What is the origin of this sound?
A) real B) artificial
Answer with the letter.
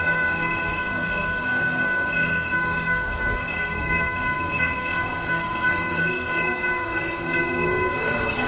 B